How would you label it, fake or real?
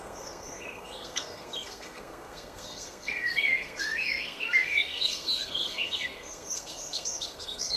fake